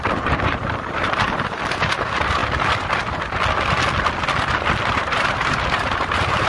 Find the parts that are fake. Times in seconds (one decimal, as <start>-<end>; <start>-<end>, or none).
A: 0.0-2.4; 4.9-6.5